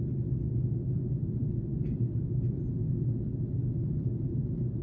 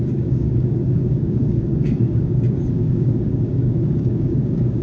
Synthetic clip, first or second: second